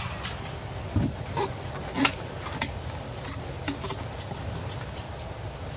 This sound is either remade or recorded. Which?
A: recorded